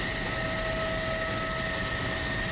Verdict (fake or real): real